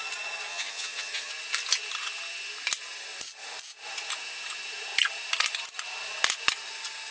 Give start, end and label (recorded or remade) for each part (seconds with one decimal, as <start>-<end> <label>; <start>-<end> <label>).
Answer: 0.0-0.5 recorded; 0.5-1.3 remade; 1.3-7.1 recorded